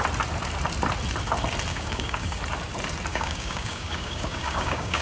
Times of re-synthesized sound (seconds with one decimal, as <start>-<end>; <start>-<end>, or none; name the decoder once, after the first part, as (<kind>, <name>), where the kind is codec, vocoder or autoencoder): 1.7-2.4 (codec, DAC); 3.1-5.0